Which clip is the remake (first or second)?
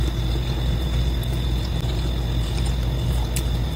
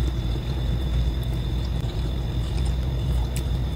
second